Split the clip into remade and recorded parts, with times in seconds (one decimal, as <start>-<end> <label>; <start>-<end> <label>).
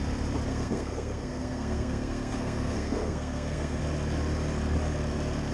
0.0-0.5 recorded; 0.5-3.8 remade; 3.8-5.5 recorded